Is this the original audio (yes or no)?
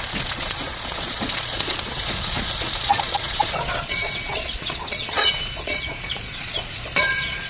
no